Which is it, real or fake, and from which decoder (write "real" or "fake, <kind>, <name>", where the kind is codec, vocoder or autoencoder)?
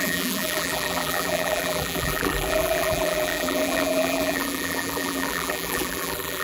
fake, vocoder, BigVGAN v2